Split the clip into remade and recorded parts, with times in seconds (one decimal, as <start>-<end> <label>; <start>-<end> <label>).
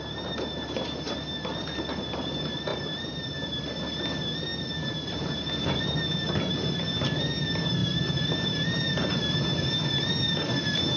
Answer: 0.0-2.7 recorded; 2.7-3.6 remade; 3.6-7.8 recorded; 7.8-9.2 remade; 9.2-11.0 recorded